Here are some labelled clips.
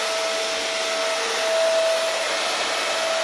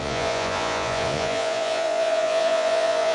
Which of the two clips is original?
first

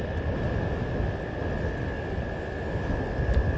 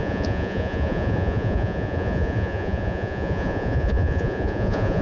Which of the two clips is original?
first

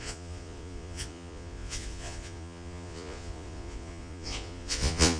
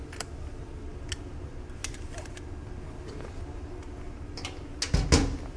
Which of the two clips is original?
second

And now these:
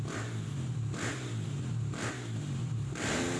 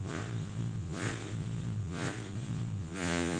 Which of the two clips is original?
first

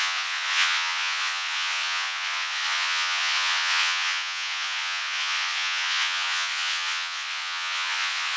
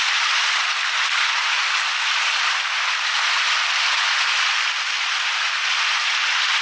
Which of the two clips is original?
second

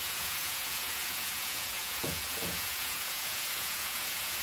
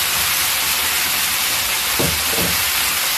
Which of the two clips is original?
second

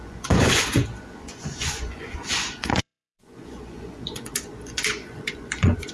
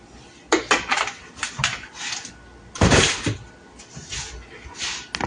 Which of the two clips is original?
second